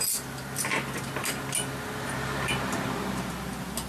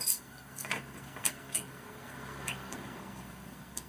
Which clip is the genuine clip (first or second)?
first